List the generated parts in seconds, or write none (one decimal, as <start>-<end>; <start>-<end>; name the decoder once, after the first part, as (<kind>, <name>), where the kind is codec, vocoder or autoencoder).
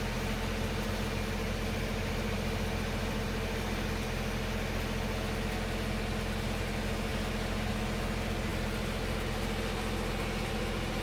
none